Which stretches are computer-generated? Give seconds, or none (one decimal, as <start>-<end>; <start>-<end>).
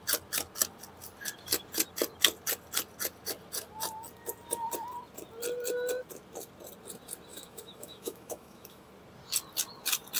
7.3-8.9